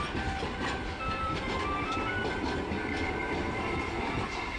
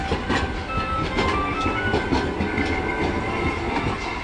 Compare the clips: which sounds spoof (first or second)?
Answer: first